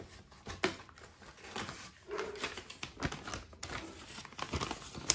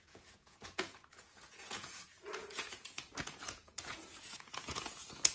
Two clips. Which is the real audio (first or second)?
first